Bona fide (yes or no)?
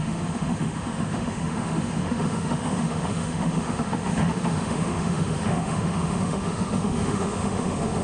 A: no